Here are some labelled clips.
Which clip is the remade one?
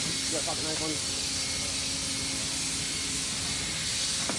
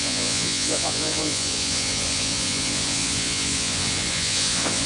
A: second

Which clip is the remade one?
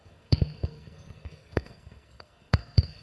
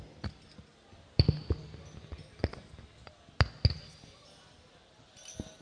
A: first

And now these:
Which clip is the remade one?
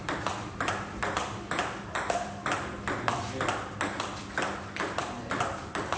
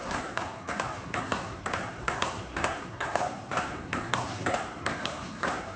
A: second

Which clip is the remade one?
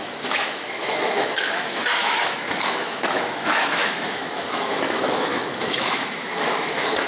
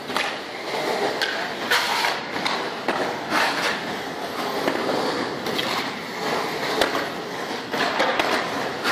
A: first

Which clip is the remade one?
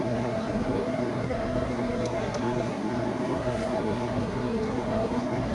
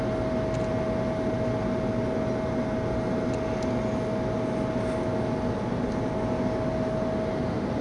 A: first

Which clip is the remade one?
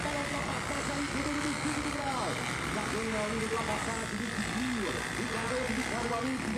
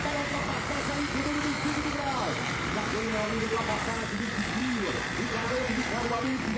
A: second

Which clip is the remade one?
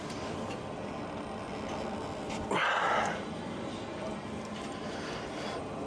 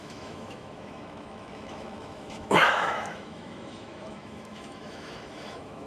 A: second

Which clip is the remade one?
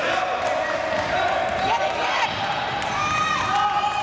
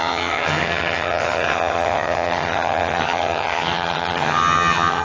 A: second